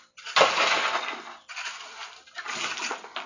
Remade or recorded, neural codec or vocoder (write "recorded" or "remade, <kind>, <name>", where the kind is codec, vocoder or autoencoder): recorded